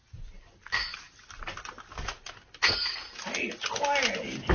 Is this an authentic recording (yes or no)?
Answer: yes